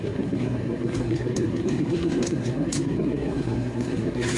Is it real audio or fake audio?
fake